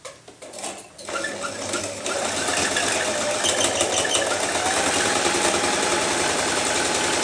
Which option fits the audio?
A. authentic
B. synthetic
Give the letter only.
A